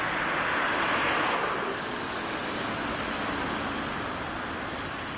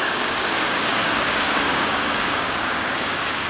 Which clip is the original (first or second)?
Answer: first